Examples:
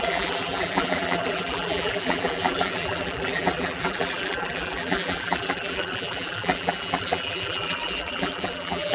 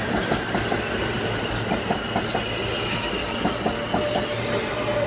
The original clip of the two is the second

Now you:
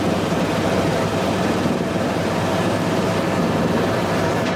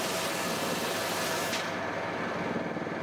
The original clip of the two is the second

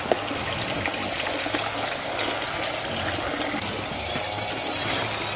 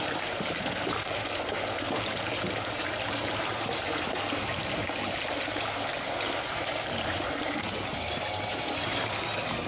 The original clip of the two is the first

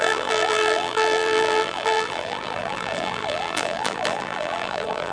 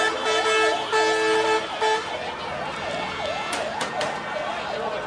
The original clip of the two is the second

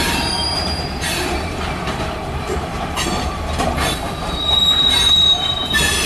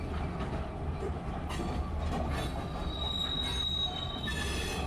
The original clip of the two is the second